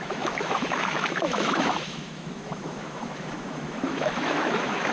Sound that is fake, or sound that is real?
fake